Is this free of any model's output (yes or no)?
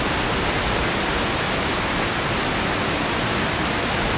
yes